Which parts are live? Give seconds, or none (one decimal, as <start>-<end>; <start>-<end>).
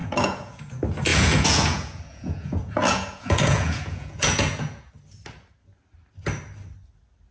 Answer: 0.6-1.1; 4.9-7.3